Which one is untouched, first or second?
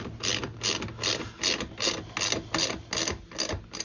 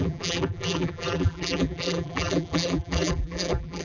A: first